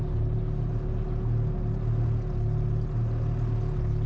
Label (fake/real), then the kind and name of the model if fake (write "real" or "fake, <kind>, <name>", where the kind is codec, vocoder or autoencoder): real